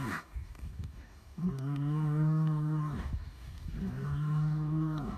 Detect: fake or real fake